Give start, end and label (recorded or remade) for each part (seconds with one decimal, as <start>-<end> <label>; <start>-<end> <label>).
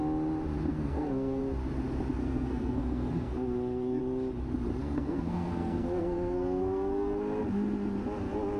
0.0-0.7 recorded; 0.7-1.4 remade; 1.4-2.2 recorded; 2.2-4.0 remade; 4.0-4.8 recorded; 4.8-7.4 remade; 7.4-8.6 recorded